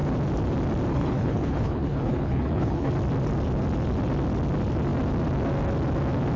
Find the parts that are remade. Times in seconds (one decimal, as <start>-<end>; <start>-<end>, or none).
0.9-2.9